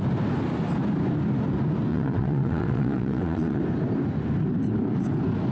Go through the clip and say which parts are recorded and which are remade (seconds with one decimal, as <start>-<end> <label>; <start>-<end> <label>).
0.0-1.9 recorded; 1.9-3.6 remade; 3.6-5.5 recorded